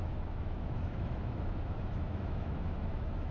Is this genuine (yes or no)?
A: no